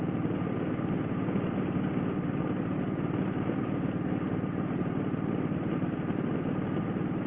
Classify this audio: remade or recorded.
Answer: recorded